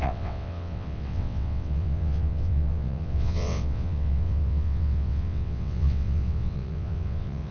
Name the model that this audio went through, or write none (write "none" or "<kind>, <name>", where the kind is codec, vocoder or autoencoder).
vocoder, WaveNeXt